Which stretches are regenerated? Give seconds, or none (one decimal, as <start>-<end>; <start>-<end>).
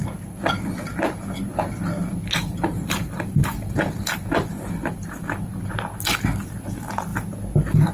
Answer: 2.4-5.7